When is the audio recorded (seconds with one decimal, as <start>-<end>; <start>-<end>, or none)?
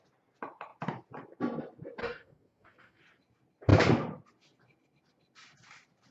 0.0-2.0; 3.0-6.1